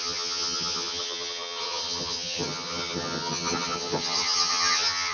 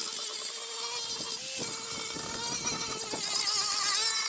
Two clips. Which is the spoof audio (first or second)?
first